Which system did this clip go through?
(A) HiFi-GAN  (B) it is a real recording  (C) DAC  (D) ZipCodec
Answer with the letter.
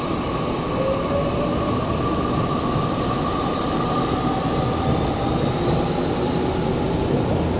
B